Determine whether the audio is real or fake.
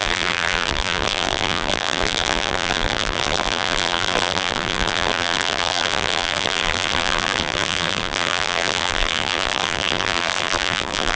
fake